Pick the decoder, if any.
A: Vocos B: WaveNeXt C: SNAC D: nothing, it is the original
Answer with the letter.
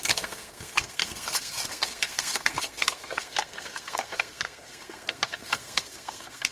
C